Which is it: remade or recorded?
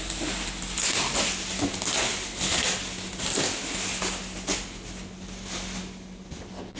recorded